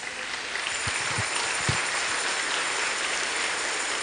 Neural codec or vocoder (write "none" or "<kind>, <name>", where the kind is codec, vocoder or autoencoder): none